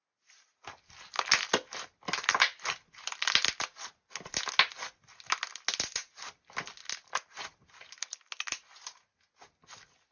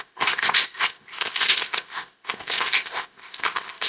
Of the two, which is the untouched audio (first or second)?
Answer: first